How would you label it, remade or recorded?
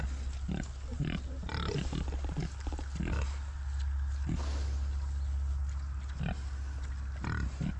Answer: recorded